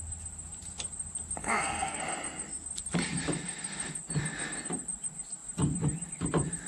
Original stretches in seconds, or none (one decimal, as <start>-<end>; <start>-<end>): 0.0-1.4; 2.0-6.7